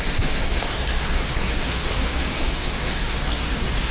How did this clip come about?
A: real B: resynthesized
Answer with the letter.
B